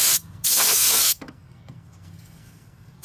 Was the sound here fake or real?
fake